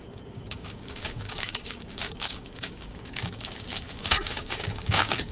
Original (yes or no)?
no